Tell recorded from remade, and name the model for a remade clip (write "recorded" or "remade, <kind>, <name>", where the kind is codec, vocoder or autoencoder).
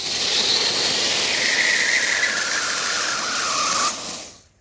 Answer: recorded